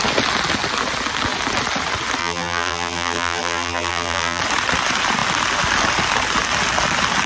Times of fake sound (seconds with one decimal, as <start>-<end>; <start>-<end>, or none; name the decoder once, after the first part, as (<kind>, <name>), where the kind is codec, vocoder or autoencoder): 2.2-4.4 (vocoder, BigVGAN v2)